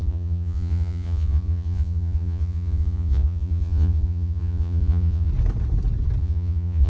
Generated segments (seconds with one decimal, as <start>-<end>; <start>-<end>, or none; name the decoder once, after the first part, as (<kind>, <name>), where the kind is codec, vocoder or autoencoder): 0.0-5.3 (vocoder, Vocos); 6.2-6.9